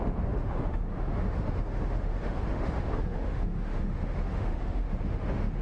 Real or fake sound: fake